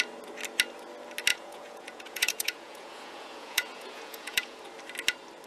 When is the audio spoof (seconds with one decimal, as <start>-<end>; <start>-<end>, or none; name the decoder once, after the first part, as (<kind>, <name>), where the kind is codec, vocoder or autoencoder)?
1.3-4.6 (vocoder, Vocos)